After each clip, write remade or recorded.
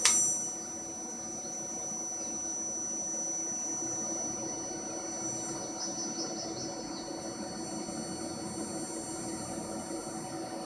recorded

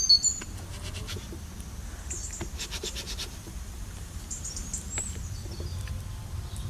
remade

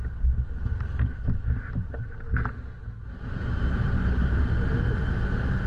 recorded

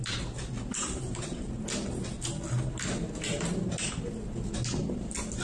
recorded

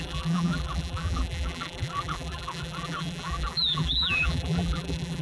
remade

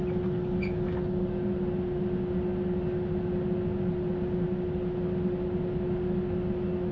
recorded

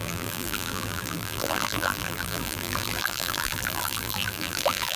remade